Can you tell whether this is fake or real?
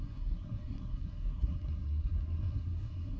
fake